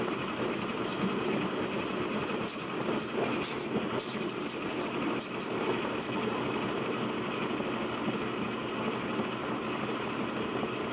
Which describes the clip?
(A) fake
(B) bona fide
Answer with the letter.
B